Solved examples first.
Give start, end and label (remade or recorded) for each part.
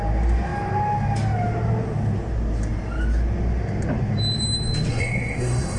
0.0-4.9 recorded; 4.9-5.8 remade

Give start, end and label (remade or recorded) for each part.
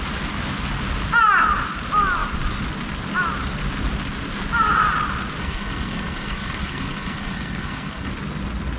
0.0-5.4 recorded; 5.4-8.1 remade; 8.1-8.8 recorded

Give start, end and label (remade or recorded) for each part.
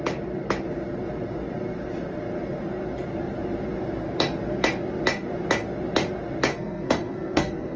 0.0-6.5 recorded; 6.5-7.8 remade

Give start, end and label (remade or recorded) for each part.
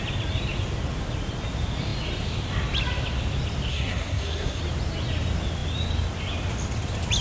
0.0-3.7 recorded; 3.7-4.6 remade; 4.6-7.2 recorded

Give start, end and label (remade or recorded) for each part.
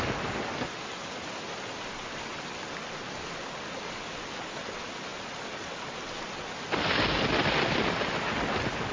0.0-8.9 recorded